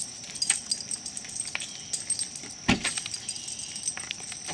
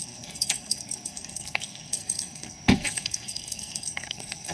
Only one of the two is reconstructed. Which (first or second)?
second